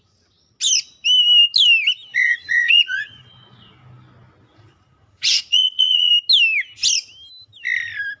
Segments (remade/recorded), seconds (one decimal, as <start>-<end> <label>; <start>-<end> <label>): 0.0-2.2 recorded; 2.2-3.7 remade; 3.7-4.5 recorded; 4.5-6.1 remade; 6.1-8.2 recorded